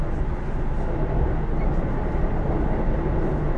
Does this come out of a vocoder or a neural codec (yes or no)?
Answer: no